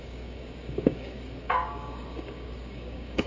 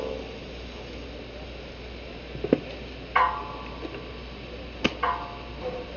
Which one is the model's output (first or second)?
first